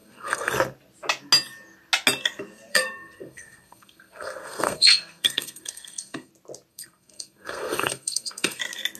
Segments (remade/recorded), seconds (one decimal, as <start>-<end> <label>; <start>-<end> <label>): 0.0-0.5 remade; 0.5-2.7 recorded; 2.7-6.3 remade; 6.3-6.7 recorded; 6.7-8.6 remade; 8.6-9.0 recorded